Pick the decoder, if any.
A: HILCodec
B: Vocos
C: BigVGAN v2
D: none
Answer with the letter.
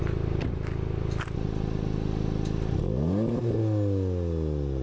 D